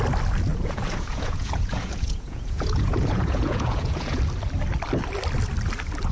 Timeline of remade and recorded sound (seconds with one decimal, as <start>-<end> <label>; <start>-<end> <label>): 0.0-0.5 recorded; 0.5-4.2 remade; 4.2-6.1 recorded